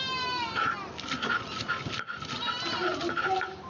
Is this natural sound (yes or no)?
yes